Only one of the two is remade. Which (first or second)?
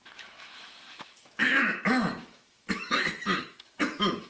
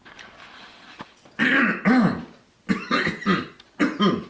first